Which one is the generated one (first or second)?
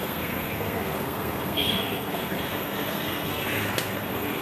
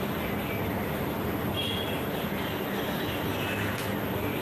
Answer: first